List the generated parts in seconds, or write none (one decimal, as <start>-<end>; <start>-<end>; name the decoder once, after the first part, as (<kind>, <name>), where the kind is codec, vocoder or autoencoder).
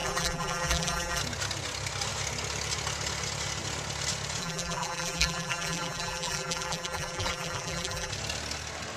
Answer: 0.0-1.2 (vocoder, BigVGAN v2); 4.4-8.1